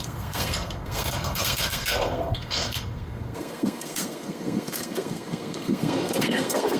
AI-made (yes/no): yes